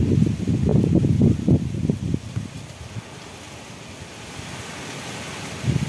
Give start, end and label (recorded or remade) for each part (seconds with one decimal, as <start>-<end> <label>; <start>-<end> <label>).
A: 0.0-5.9 recorded